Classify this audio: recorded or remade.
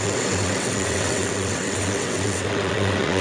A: remade